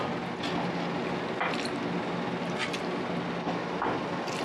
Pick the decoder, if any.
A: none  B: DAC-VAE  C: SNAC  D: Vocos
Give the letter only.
A